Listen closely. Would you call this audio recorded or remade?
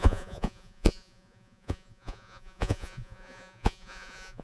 remade